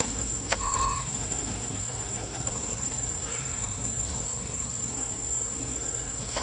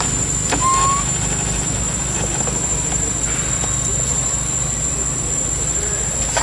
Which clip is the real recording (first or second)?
second